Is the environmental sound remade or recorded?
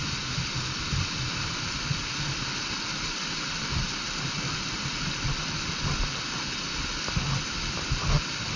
recorded